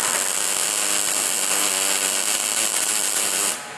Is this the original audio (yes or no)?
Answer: yes